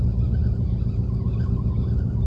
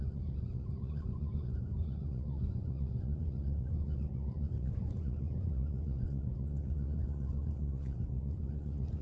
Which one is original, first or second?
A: first